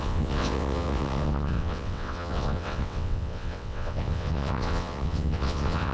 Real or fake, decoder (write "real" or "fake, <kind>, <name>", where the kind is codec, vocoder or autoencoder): fake, vocoder, WaveNeXt